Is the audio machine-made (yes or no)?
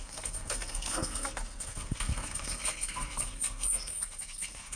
yes